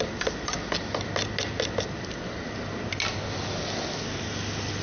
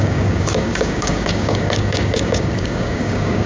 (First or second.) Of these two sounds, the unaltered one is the first